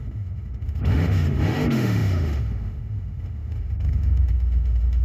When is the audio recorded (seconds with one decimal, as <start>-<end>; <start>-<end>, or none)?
none